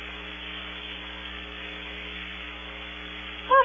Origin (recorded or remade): remade